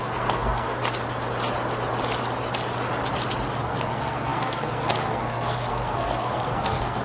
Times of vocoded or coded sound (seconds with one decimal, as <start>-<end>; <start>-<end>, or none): 0.0-0.8; 3.6-7.0